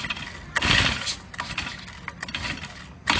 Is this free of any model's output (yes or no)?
yes